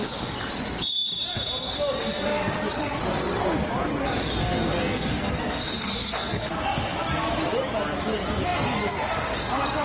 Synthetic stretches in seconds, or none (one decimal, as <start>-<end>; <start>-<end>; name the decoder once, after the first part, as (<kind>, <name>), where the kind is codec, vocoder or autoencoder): 4.4-6.5 (codec, SNAC)